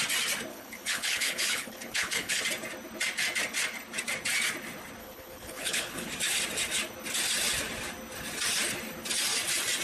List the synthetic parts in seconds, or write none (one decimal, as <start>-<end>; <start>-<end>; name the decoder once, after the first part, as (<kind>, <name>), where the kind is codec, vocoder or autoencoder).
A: 0.5-2.4 (codec, HILCodec); 5.0-6.1